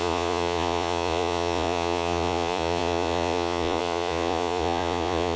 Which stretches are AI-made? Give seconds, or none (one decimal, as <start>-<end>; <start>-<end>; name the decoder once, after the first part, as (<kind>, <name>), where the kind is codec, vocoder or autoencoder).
0.0-5.4 (vocoder, Vocos)